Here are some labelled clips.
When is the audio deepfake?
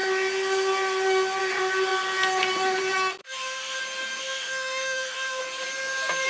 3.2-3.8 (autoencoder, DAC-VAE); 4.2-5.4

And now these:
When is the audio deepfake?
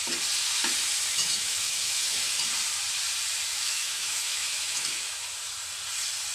1.1-2.4 (autoencoder, DAC-VAE); 3.5-5.2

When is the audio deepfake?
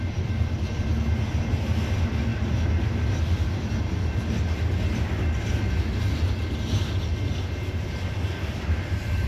none